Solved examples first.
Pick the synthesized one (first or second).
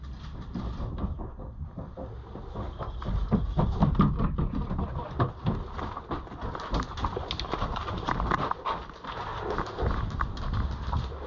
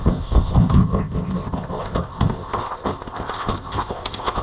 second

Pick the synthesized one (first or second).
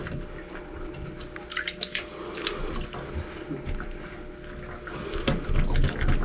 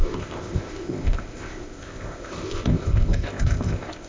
second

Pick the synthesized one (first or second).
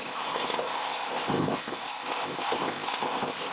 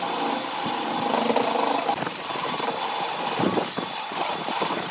first